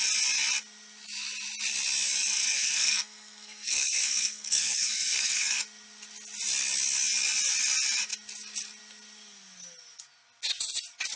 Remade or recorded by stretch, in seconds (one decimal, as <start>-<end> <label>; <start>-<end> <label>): 0.0-2.5 recorded; 2.5-5.6 remade; 5.6-11.2 recorded